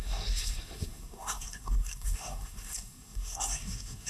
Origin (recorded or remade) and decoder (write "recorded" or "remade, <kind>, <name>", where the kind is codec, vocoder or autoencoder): remade, codec, SNAC